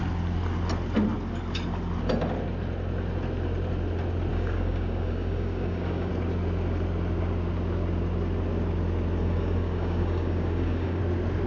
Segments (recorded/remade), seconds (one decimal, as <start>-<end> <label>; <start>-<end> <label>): 0.0-4.3 recorded; 4.3-6.1 remade; 6.1-9.2 recorded; 9.2-11.0 remade; 11.0-11.5 recorded